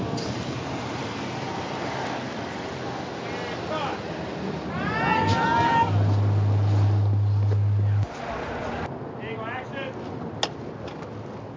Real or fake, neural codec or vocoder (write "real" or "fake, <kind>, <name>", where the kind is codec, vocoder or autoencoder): real